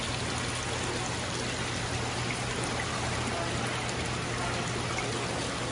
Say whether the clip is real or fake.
real